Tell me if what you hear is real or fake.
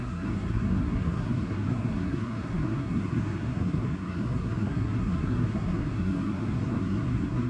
fake